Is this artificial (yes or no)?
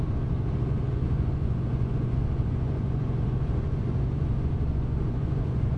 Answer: yes